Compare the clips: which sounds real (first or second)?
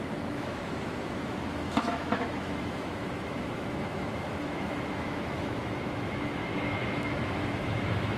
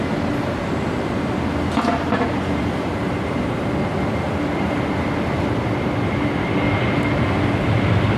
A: second